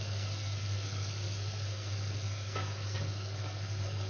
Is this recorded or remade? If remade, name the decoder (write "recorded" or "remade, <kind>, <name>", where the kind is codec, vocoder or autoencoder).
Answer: remade, codec, SNAC